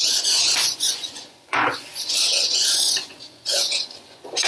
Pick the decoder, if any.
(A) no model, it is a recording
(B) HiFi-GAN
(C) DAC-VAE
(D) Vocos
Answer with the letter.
D